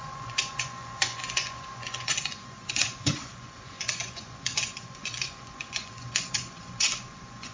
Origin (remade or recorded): remade